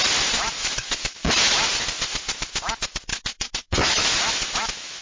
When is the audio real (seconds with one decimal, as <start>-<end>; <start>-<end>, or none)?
0.0-0.6; 1.3-3.1